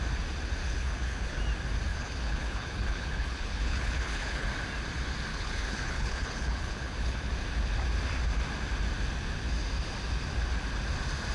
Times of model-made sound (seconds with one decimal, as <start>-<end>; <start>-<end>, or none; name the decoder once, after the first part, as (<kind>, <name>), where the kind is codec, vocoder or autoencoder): 0.6-1.4 (codec, HILCodec); 1.9-4.5; 5.3-7.3